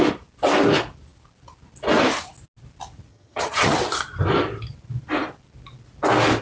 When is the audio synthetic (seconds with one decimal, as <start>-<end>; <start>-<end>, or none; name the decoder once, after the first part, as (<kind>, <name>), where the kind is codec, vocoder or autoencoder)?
3.1-3.8 (vocoder, HiFi-GAN)